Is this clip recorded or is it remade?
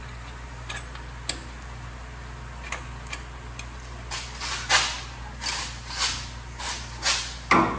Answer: recorded